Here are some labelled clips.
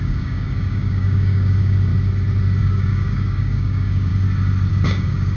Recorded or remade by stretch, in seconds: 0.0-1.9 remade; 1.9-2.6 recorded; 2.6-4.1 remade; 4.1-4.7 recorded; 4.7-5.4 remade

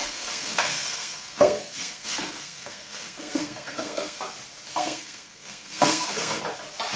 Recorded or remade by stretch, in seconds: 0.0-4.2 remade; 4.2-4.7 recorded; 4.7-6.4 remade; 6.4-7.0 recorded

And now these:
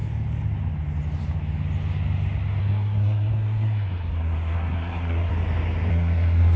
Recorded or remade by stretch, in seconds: 0.0-2.6 recorded; 2.6-5.3 remade; 5.3-5.9 recorded; 5.9-6.6 remade